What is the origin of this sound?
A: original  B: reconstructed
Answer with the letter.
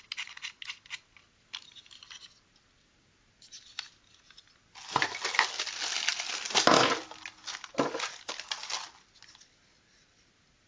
A